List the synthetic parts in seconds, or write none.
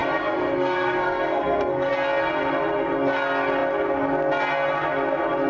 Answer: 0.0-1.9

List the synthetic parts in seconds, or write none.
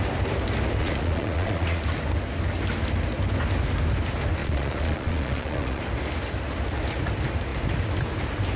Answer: 0.8-1.8; 4.4-5.8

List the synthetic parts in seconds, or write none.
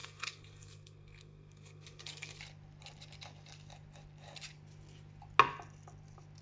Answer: 0.0-2.4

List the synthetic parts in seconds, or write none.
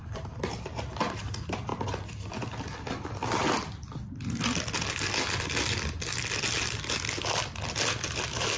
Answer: 0.0-1.7; 5.4-8.6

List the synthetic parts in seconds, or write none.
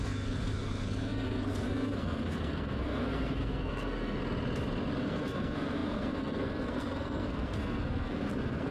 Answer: 0.0-4.2; 5.0-8.7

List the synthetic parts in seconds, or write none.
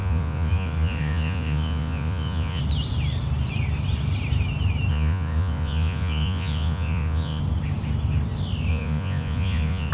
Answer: 0.0-2.6; 4.9-7.4; 8.7-9.9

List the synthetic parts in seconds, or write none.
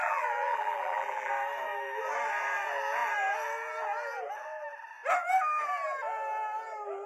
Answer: 0.0-1.3